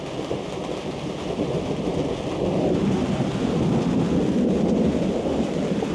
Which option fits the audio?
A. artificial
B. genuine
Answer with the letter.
B